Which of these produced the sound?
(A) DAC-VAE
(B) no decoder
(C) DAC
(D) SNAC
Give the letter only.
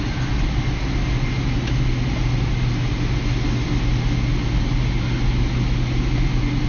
B